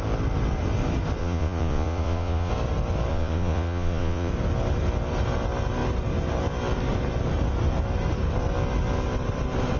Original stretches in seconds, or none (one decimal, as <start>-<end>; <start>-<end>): 0.0-1.2; 2.5-3.1; 4.3-9.8